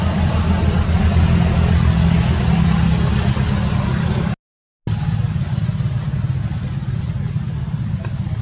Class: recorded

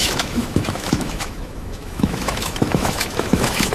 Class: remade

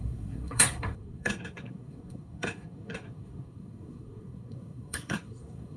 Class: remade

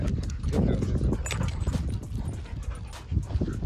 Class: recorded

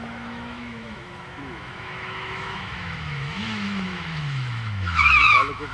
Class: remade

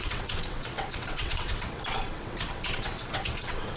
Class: remade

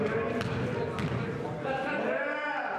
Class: recorded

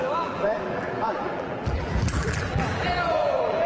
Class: remade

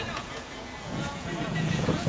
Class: remade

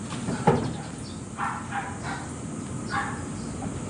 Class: recorded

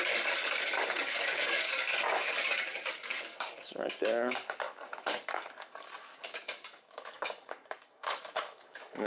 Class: remade